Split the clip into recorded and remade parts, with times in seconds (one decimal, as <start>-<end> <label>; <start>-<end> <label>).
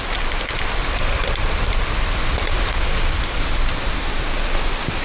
0.0-5.0 recorded